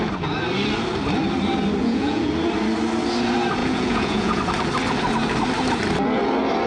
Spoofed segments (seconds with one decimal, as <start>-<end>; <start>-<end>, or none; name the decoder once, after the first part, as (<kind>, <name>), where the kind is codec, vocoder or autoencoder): 1.8-2.3 (vocoder, Vocos); 3.6-4.4